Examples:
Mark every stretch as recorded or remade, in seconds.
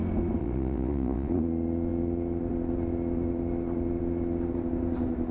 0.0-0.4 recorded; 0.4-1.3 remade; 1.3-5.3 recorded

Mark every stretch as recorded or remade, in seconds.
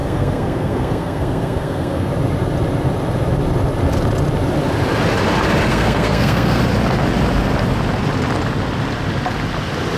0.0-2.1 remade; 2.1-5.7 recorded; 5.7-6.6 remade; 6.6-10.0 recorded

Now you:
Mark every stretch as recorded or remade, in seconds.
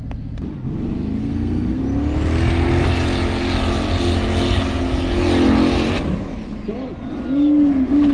0.0-1.2 recorded; 1.2-1.8 remade; 1.8-8.1 recorded